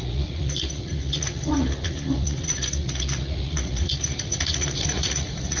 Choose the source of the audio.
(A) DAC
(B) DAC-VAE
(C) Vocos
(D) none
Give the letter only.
C